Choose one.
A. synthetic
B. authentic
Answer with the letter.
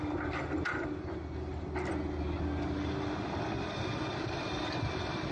B